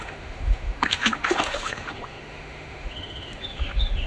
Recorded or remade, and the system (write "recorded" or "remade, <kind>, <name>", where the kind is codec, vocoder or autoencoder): remade, autoencoder, DAC-VAE